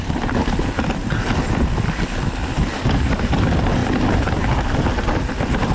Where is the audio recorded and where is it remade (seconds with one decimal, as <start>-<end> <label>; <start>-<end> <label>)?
0.0-5.7 recorded